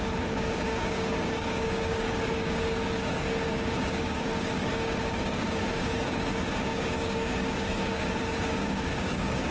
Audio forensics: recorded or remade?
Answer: remade